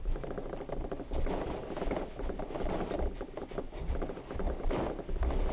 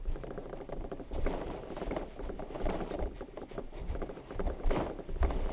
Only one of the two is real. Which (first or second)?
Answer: first